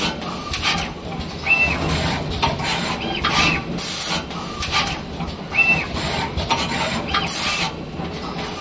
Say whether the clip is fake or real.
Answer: real